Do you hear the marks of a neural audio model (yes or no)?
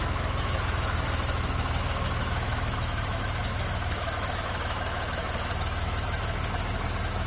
yes